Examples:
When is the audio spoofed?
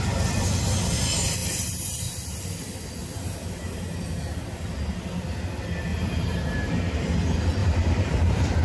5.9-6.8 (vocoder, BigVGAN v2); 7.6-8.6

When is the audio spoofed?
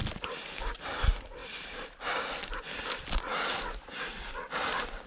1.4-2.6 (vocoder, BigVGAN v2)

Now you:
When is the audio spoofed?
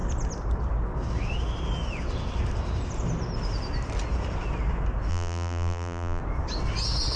5.1-6.2 (vocoder, BigVGAN v2)